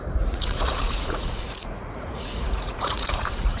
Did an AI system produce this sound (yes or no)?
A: yes